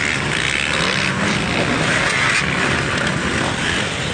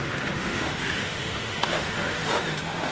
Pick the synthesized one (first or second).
second